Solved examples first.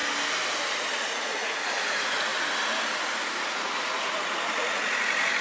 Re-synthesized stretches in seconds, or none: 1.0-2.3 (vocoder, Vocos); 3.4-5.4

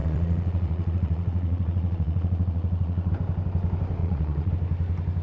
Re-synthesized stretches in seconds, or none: 0.0-3.1 (vocoder, Vocos); 4.0-4.5

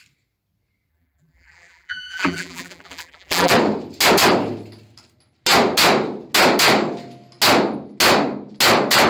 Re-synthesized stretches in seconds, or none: 0.9-3.5 (vocoder, BigVGAN v2)

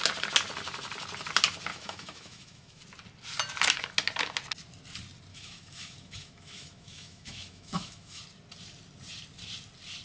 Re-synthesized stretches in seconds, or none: 1.7-2.8 (autoencoder, DAC-VAE); 5.3-8.2

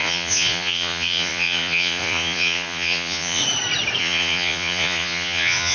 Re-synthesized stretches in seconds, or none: 0.0-3.4 (vocoder, Vocos); 4.0-5.7

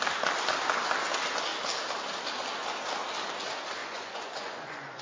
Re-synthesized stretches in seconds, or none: 3.8-5.0 (vocoder, Vocos)